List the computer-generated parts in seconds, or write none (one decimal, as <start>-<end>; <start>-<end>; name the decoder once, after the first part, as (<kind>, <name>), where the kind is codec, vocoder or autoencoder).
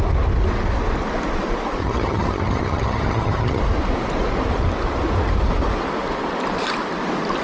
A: 1.8-3.6 (vocoder, HiFi-GAN)